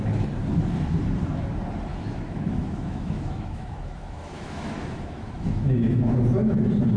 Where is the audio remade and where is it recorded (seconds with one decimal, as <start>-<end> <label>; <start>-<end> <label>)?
0.0-1.9 recorded; 1.9-6.1 remade; 6.1-7.0 recorded